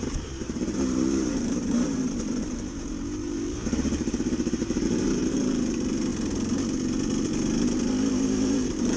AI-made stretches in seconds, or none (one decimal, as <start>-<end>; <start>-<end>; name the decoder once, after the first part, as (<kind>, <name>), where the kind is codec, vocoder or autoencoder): 0.0-6.1 (vocoder, BigVGAN v2); 8.1-9.0